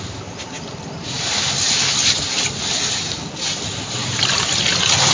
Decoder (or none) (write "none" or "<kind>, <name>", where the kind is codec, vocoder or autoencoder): none